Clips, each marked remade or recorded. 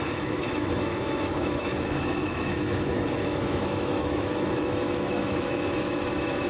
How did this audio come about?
remade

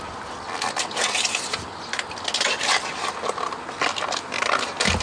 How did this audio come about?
recorded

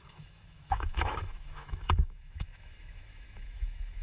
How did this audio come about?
remade